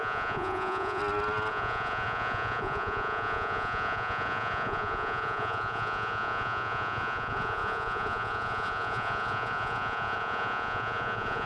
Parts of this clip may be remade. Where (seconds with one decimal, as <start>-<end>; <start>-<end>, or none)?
0.0-1.0; 1.5-11.5